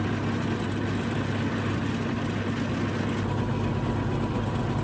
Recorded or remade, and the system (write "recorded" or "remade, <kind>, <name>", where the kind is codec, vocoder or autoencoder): recorded